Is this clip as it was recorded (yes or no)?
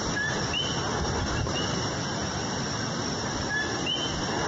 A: yes